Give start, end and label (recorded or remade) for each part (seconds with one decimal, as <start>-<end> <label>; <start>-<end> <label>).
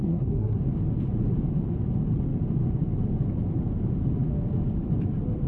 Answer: 0.0-0.6 remade; 0.6-5.5 recorded